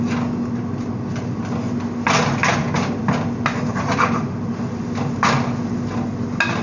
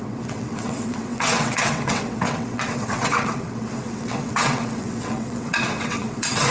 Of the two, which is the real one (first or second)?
first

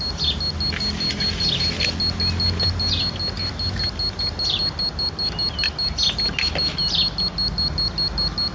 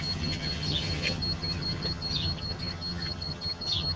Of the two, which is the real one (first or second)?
first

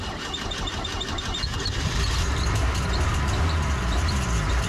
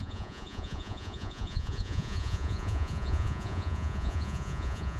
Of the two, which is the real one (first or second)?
first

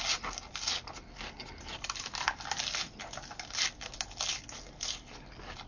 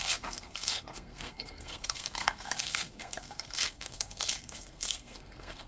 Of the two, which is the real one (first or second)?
first